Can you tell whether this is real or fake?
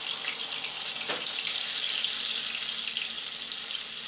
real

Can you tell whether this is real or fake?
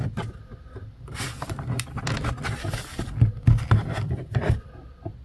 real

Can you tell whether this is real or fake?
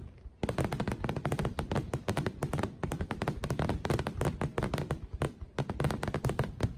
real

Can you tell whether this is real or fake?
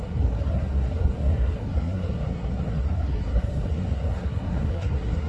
fake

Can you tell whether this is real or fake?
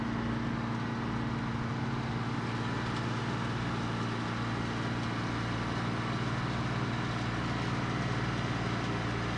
real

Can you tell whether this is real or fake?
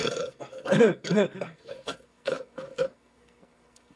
fake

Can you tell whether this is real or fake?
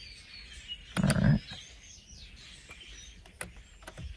real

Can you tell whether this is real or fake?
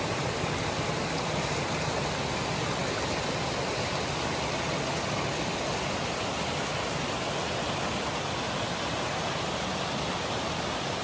real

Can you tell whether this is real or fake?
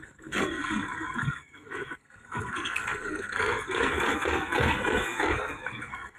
fake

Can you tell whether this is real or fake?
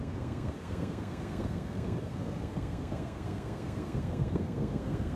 fake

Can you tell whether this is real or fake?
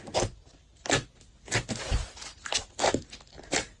real